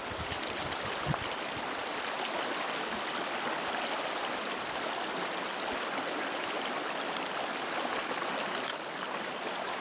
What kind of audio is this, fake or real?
real